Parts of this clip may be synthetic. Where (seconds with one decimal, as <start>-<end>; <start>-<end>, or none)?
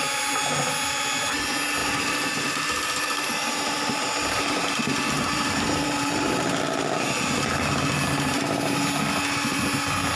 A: 1.8-6.6